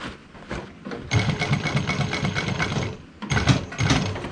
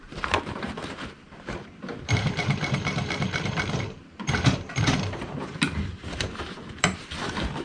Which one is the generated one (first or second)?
second